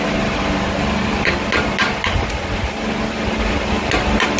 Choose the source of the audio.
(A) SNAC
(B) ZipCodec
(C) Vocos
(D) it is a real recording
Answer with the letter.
D